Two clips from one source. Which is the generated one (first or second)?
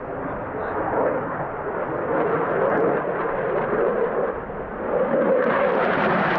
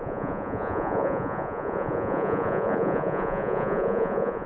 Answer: second